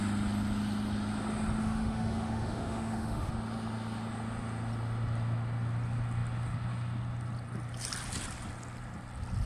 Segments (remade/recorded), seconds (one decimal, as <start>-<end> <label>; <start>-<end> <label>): 0.0-1.6 recorded; 1.6-3.3 remade; 3.3-9.5 recorded